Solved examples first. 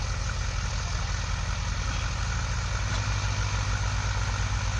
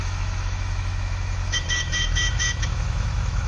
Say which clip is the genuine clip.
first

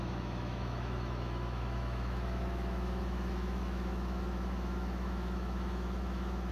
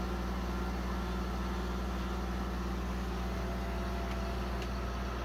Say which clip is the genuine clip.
second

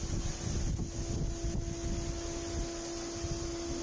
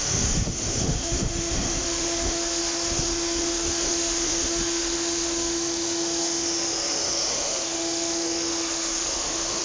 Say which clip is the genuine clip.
first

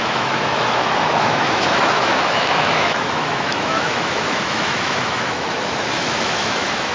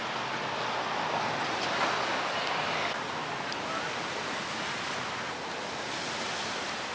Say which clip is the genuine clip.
second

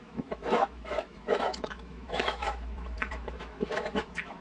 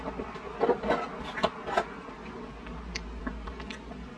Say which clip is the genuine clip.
second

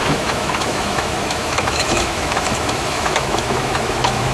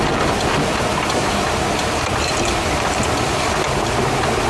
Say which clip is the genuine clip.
second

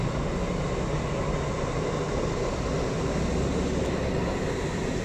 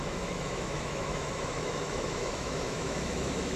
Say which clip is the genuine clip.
first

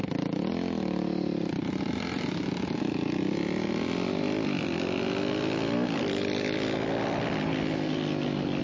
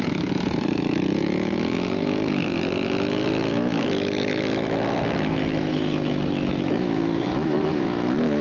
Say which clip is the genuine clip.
first